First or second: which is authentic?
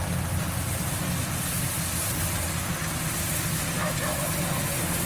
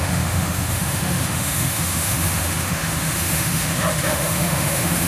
first